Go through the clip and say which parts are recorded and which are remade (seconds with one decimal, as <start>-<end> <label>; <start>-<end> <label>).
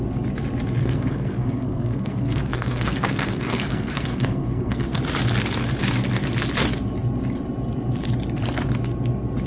0.0-0.8 recorded; 0.8-5.0 remade; 5.0-9.5 recorded